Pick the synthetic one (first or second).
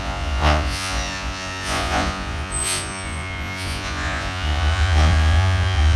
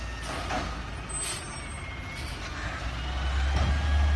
first